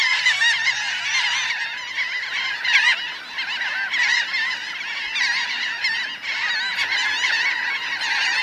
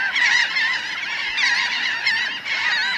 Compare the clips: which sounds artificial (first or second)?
second